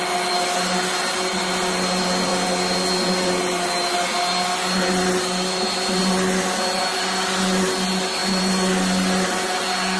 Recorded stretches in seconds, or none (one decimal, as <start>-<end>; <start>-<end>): 0.0-10.0